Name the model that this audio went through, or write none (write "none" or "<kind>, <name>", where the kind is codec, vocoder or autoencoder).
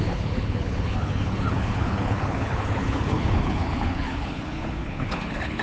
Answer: codec, HILCodec